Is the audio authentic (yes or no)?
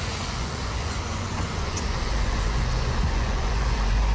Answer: no